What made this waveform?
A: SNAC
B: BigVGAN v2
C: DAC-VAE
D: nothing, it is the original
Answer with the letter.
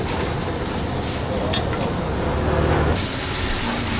D